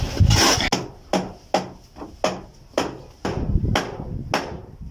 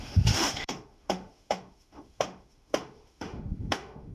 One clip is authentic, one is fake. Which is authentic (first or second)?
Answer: first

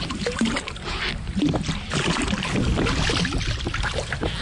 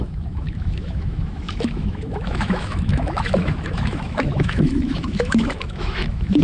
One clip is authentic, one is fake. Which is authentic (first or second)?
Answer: first